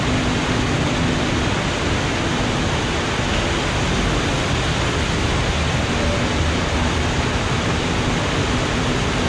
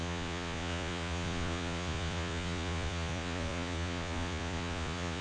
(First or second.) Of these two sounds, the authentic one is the first